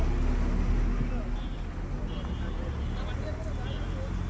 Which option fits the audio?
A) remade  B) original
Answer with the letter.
B